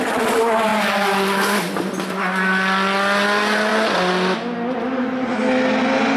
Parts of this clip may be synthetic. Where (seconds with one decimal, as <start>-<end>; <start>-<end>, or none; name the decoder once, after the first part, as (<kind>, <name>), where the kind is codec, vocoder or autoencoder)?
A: none